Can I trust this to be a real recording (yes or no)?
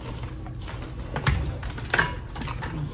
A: yes